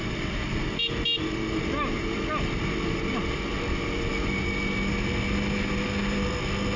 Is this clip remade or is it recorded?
recorded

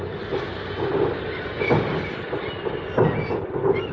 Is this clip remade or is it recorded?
recorded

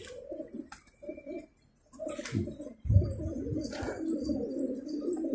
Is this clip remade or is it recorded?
remade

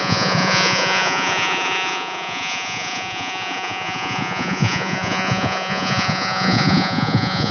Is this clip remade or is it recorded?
remade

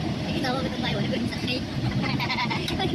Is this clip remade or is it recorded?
remade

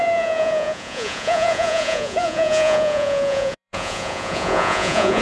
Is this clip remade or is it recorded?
remade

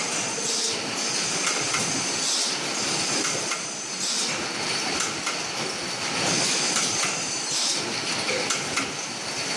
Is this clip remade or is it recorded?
recorded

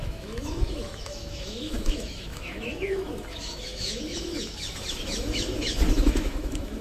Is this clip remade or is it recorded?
remade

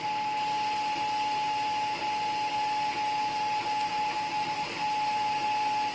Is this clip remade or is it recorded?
recorded